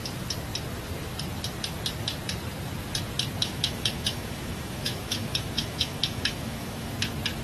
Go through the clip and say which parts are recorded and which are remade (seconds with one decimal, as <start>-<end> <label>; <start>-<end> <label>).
0.0-3.4 recorded; 3.4-6.9 remade; 6.9-7.4 recorded